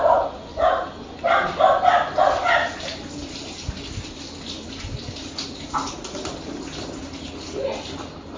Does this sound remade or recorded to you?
recorded